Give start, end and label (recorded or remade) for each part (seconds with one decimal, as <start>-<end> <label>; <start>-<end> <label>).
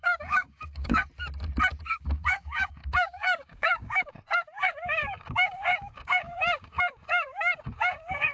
0.0-1.0 remade; 1.0-1.9 recorded; 1.9-8.3 remade